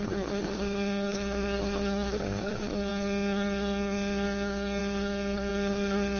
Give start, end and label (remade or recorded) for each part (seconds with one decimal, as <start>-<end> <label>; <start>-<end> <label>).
0.0-6.2 remade